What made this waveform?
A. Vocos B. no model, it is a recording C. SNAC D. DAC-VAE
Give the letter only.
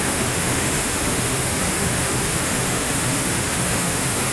D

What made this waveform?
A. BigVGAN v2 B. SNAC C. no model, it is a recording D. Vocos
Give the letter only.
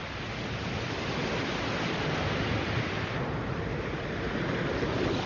C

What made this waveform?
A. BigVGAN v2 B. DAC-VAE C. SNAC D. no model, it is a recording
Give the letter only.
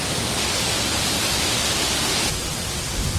D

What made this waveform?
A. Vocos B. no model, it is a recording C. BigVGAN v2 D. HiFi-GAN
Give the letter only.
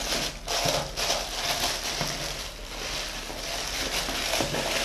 B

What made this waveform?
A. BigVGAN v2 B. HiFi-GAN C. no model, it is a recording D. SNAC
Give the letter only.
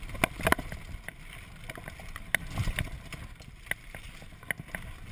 C